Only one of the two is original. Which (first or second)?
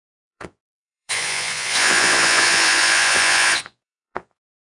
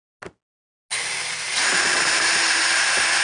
second